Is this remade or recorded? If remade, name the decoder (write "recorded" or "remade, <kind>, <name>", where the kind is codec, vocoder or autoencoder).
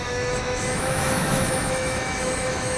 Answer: remade, autoencoder, DAC-VAE